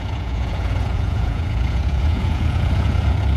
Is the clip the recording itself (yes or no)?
no